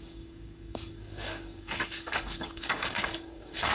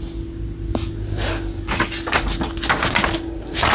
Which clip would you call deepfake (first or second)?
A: first